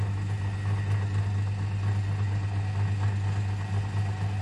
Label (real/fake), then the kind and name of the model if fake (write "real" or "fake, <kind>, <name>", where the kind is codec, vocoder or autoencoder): real